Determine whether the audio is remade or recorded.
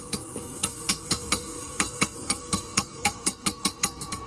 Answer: remade